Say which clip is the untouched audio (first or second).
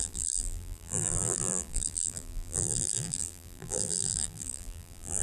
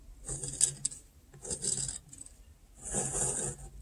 second